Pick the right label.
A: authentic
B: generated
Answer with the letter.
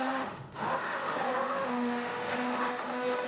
B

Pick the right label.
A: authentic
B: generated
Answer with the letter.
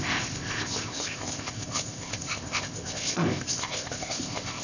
B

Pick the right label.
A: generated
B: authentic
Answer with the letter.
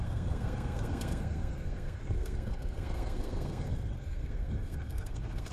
A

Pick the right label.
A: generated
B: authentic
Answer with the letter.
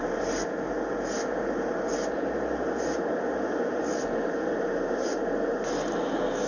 B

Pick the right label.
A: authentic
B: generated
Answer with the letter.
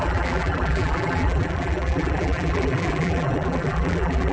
B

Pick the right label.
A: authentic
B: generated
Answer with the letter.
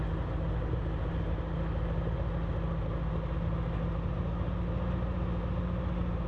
A